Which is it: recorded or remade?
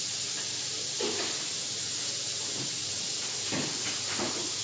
recorded